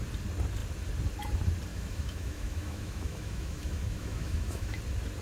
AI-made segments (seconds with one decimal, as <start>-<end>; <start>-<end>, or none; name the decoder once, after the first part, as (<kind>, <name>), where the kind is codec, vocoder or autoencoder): 1.7-4.8 (autoencoder, DAC-VAE)